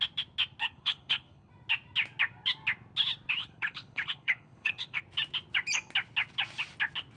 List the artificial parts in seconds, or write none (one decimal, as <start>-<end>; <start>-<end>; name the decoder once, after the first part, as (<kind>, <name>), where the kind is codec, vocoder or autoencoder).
0.6-1.5 (codec, HILCodec); 3.4-5.0